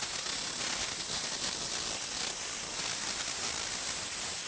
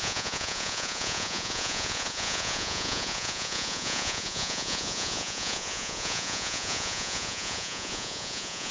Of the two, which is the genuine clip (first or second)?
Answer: first